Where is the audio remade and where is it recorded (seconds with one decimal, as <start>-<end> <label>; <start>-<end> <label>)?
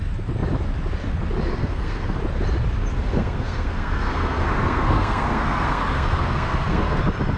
0.0-1.6 recorded; 1.6-2.2 remade; 2.2-2.9 recorded; 2.9-7.0 remade; 7.0-7.4 recorded